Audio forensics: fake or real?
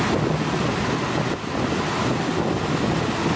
real